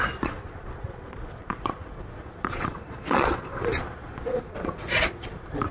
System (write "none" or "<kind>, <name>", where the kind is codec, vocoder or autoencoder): vocoder, Vocos